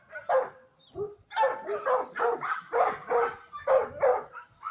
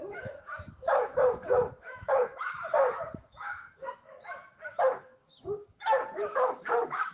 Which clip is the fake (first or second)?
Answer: second